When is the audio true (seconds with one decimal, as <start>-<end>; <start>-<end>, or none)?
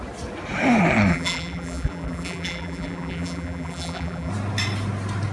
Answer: 0.0-1.1; 4.3-5.3